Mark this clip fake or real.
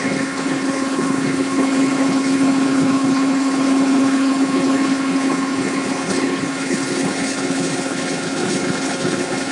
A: fake